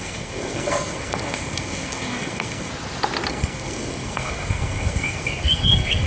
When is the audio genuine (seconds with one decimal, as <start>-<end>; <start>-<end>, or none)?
2.7-3.3